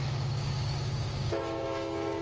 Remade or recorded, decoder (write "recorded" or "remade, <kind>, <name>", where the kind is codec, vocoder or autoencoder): remade, codec, DAC